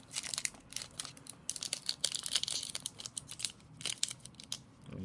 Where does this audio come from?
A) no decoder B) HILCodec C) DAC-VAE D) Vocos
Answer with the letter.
A